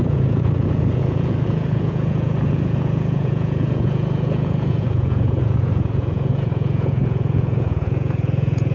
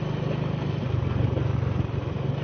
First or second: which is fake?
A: first